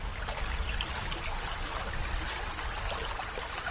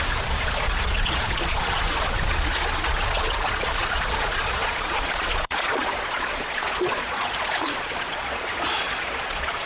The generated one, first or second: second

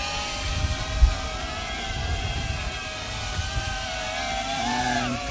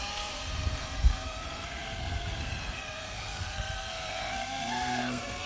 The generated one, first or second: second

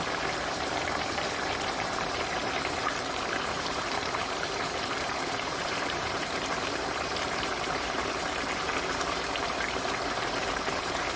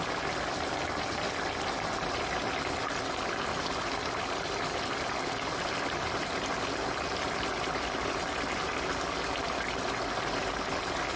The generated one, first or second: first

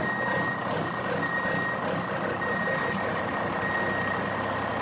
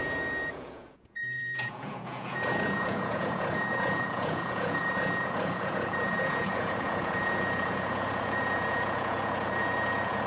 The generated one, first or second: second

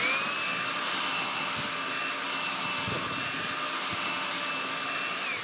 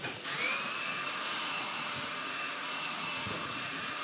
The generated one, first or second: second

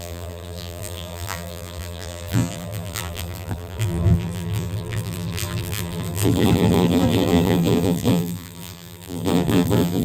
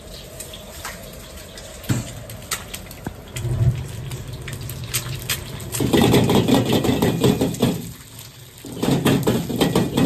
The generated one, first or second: first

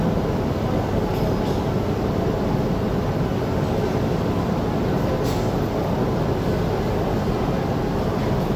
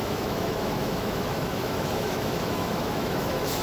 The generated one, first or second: second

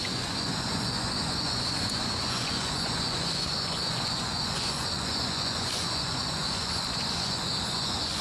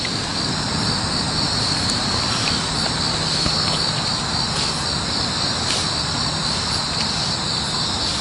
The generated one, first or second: first